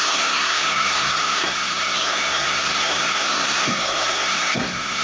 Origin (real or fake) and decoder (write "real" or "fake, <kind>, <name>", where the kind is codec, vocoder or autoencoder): fake, codec, SNAC